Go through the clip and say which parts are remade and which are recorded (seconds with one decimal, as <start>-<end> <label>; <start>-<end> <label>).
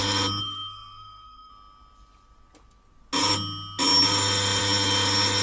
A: 0.0-0.4 recorded; 0.4-1.5 remade; 1.5-5.4 recorded